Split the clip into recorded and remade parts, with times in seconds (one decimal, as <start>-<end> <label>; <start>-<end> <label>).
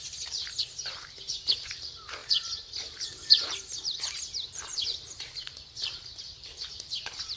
0.0-7.4 remade